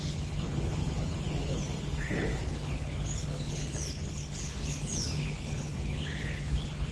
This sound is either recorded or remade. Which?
remade